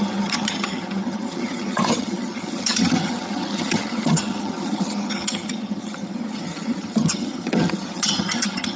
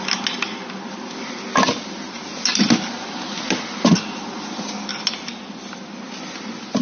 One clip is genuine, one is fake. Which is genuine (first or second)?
second